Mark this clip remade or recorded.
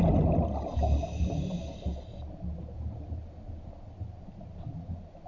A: recorded